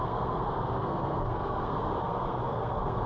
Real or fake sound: fake